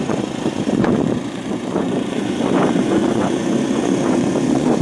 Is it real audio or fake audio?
fake